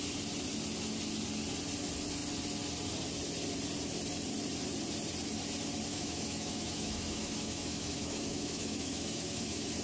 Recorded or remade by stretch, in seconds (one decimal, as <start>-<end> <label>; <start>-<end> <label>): 0.0-5.9 recorded; 5.9-9.8 remade